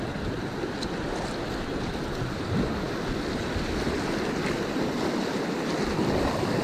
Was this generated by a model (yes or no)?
no